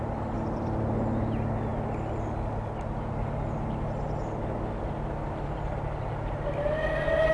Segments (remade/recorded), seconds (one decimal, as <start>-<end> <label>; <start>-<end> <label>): 0.0-7.3 recorded